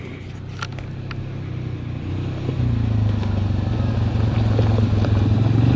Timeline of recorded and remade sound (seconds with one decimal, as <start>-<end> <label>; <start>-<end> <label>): 0.0-5.8 recorded